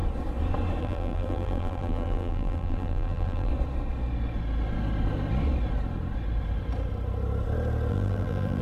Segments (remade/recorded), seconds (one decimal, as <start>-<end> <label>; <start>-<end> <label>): 0.0-0.8 recorded; 0.8-3.5 remade; 3.5-7.9 recorded; 7.9-8.6 remade